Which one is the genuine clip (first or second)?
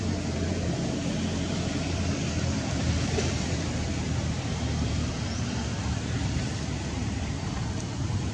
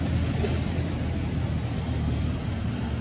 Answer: second